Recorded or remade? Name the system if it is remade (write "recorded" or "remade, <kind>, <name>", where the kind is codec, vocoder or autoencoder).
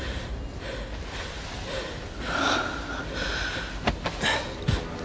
recorded